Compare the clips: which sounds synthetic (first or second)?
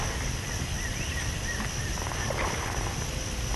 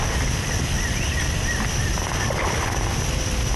second